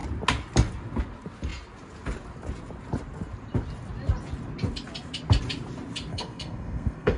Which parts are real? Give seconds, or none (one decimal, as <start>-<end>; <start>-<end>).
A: 0.0-6.1